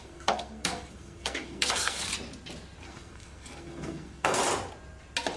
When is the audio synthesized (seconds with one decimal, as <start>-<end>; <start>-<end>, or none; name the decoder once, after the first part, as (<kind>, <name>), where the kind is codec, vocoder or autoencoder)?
0.0-2.1 (codec, SNAC); 2.8-4.4